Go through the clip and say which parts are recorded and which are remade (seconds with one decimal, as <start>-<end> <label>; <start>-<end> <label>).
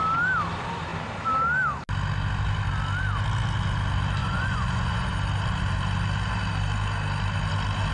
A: 0.0-4.2 recorded; 4.2-5.1 remade; 5.1-7.9 recorded